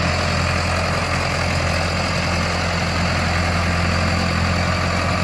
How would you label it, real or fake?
real